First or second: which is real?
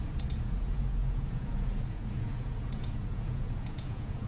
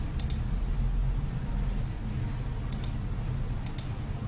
second